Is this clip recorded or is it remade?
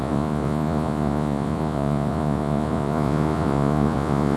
remade